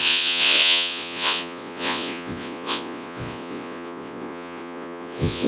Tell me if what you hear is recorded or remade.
remade